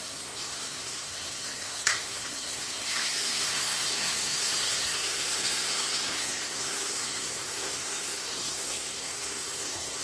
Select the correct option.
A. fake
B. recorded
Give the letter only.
A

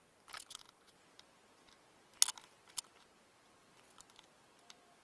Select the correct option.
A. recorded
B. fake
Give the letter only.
A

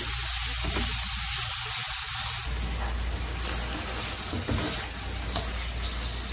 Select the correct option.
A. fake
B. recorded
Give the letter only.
B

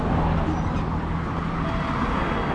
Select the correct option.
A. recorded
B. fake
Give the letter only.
A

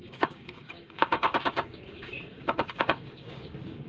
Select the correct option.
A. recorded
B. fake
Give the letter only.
B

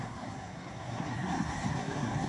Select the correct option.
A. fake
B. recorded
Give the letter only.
A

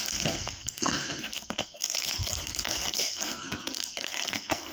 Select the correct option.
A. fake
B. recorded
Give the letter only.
A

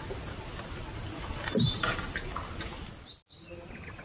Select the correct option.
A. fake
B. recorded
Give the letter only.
B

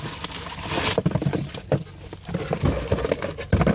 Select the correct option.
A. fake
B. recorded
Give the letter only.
B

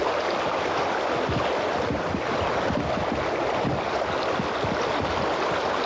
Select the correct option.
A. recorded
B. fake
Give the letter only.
A